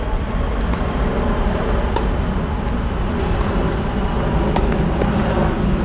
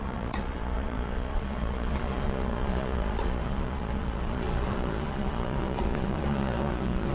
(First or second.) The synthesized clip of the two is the second